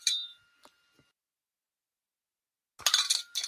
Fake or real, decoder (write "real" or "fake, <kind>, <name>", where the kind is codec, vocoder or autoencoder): real